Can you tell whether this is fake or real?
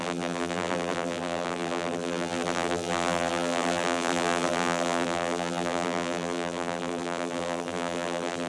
fake